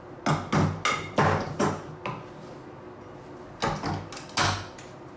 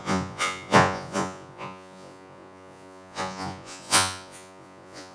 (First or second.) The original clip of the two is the first